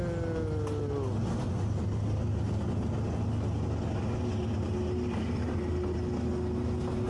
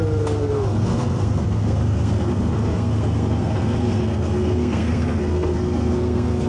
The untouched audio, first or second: first